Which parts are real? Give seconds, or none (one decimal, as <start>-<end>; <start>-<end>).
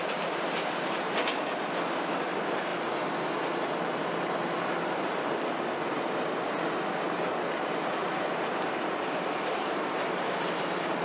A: 0.0-8.0; 10.4-11.0